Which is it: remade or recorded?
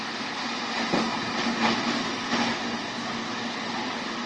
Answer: recorded